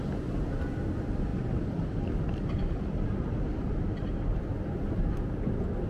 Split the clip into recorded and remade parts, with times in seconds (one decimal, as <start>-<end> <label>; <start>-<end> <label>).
0.0-5.9 recorded